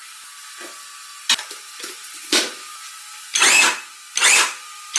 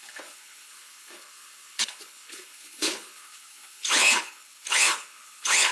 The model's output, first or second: second